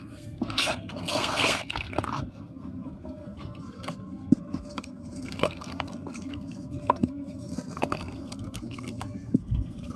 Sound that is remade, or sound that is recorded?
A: remade